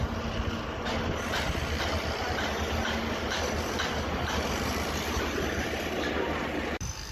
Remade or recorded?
recorded